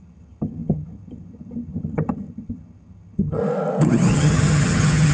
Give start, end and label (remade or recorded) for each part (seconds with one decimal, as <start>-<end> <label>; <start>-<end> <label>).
0.0-3.4 remade; 3.4-4.1 recorded; 4.1-5.1 remade